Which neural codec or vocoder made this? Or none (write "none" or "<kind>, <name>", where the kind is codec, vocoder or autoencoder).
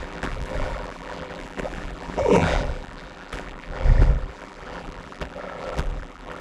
vocoder, BigVGAN v2